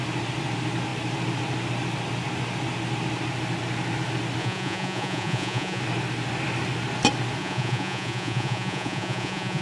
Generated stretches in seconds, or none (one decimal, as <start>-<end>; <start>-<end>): 4.4-5.8; 7.4-9.6